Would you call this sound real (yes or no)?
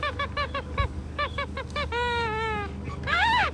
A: no